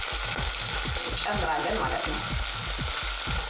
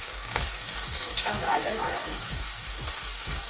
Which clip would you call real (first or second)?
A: first